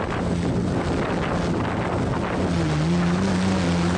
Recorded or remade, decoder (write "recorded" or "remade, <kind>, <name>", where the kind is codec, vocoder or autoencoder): recorded